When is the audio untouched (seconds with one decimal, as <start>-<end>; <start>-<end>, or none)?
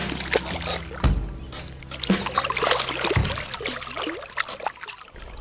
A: 0.0-5.4